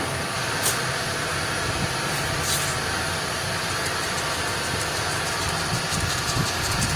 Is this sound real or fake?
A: fake